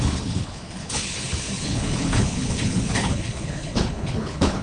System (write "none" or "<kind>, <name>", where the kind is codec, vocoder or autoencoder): codec, HILCodec